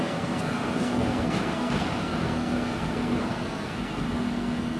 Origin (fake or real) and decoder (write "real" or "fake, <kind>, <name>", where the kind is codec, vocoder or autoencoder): fake, codec, SNAC